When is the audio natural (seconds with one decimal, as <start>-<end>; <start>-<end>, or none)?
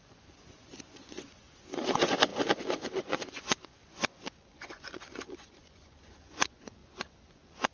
none